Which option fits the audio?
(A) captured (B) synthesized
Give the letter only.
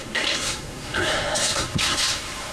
B